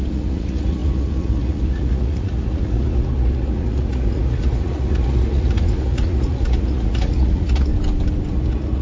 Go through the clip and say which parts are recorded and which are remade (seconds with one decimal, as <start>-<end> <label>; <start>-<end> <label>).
0.0-7.7 remade; 7.7-8.3 recorded; 8.3-8.8 remade